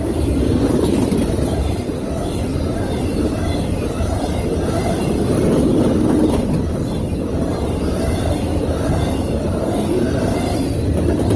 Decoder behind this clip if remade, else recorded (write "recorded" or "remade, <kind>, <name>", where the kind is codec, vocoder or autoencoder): recorded